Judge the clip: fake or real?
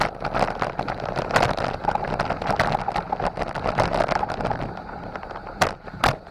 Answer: real